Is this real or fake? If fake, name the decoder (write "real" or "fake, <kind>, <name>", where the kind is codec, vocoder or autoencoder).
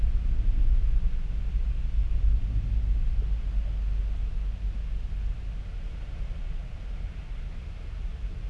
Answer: real